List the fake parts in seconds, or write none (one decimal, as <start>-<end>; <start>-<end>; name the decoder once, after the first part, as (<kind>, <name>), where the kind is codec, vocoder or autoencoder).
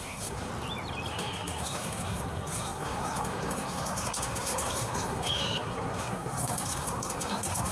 0.0-0.5 (codec, SNAC); 1.1-7.7